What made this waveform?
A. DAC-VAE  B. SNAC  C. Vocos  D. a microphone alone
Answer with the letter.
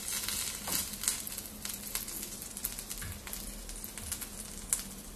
D